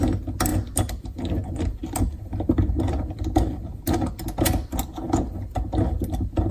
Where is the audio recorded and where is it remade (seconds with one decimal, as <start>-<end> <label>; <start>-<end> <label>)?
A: 0.0-6.5 recorded